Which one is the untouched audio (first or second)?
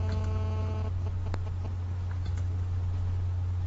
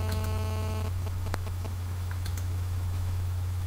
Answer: first